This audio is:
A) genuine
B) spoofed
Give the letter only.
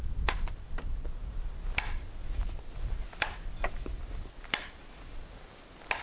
A